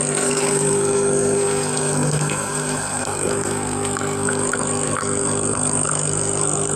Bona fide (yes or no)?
no